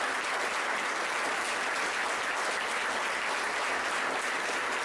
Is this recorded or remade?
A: recorded